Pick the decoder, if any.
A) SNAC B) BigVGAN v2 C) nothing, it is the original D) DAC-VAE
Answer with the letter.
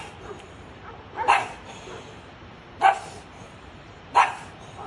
B